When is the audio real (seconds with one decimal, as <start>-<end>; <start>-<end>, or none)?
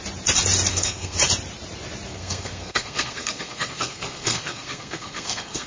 0.0-0.7; 1.2-2.1